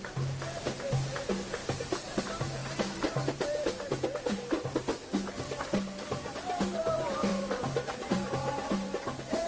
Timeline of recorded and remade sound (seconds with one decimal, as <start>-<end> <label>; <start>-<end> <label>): 0.0-1.6 recorded; 1.6-2.2 remade; 2.2-2.6 recorded; 2.6-5.3 remade; 5.3-7.3 recorded; 7.3-8.3 remade; 8.3-9.5 recorded